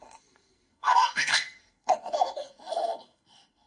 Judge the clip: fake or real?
fake